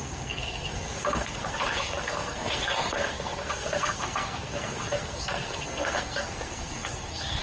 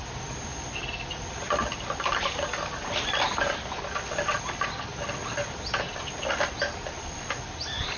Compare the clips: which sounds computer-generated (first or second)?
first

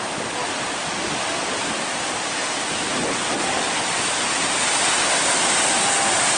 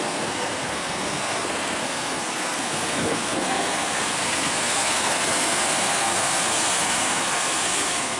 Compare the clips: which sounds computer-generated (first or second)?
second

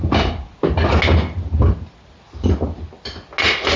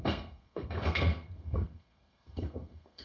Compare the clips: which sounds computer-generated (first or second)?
second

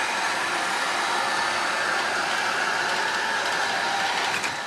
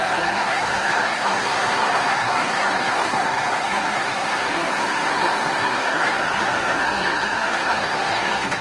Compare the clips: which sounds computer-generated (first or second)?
second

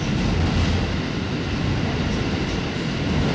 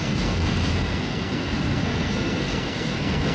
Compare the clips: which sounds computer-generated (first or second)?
second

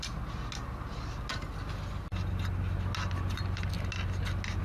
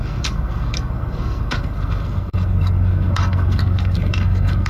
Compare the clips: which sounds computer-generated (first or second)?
second